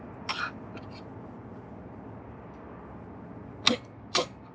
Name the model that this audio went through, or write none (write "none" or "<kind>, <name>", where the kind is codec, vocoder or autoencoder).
none